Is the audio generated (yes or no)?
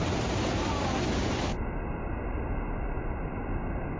no